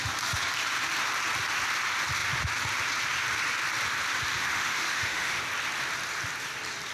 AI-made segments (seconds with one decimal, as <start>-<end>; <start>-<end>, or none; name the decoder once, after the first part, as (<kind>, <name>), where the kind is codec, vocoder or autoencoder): 4.4-5.4 (autoencoder, DAC-VAE)